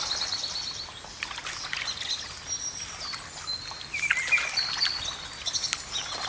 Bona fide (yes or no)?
yes